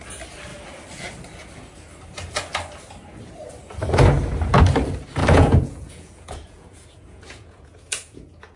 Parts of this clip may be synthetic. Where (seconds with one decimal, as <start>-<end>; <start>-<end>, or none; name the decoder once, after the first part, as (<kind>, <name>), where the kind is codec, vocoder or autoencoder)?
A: 5.2-8.6 (vocoder, Vocos)